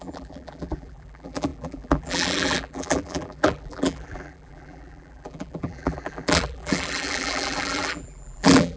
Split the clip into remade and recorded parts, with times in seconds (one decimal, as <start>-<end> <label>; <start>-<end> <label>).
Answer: 0.0-8.8 remade